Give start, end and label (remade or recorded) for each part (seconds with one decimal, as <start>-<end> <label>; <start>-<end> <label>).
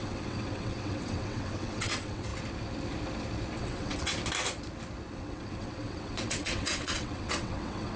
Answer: 0.0-2.3 remade; 2.3-3.6 recorded; 3.6-4.1 remade; 4.1-5.1 recorded; 5.1-8.0 remade